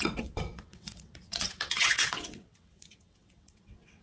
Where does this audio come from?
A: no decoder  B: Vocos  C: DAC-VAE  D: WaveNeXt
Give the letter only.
D